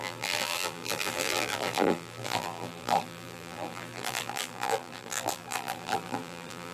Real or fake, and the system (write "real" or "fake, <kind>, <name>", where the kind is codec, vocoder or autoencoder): fake, vocoder, BigVGAN v2